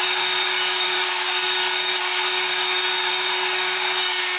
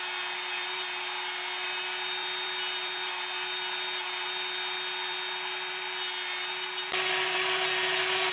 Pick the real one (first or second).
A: second